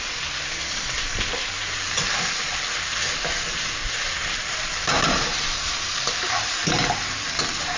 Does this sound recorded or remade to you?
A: remade